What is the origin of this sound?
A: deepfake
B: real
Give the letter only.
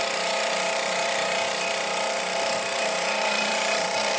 A